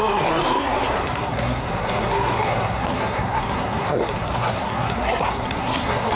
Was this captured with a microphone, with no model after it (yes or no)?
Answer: no